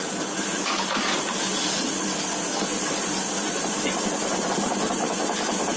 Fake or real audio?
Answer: real